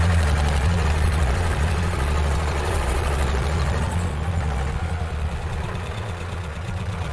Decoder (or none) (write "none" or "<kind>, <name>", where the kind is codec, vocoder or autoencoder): vocoder, Vocos